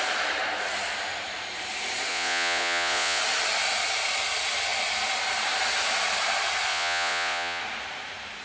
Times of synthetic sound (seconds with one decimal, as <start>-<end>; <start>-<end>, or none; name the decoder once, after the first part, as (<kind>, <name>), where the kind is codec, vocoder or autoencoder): 2.1-3.2 (vocoder, Vocos); 6.7-7.6